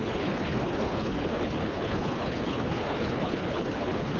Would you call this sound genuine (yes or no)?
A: no